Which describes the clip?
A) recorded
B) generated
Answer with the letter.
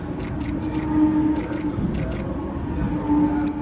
A